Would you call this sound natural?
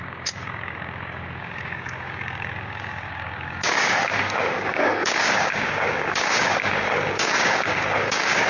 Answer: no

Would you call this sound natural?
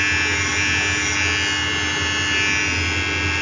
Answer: yes